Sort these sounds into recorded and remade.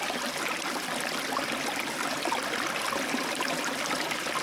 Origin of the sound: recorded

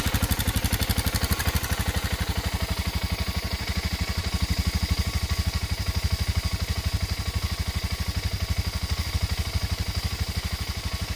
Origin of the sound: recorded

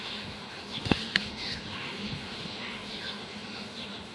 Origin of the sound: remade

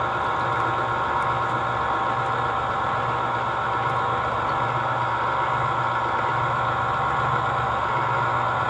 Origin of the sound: recorded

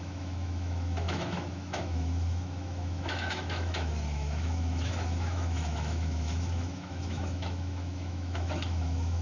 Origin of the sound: remade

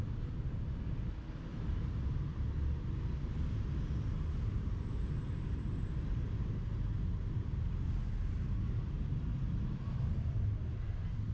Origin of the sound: recorded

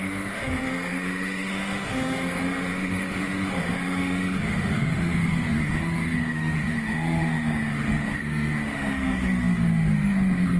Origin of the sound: remade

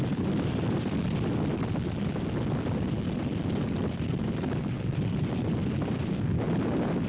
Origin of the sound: recorded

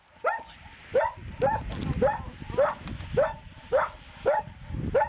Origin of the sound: recorded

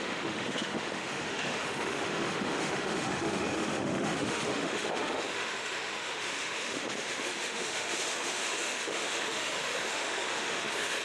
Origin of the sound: remade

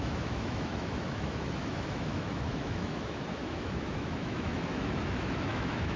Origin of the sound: remade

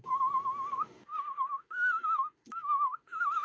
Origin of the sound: remade